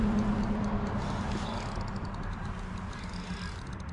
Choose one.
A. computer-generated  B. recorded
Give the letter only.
B